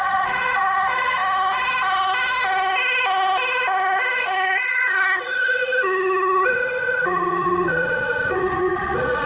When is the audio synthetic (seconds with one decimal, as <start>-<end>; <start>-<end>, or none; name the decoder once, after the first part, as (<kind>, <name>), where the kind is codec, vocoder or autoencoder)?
0.0-1.2 (vocoder, Vocos); 4.2-9.3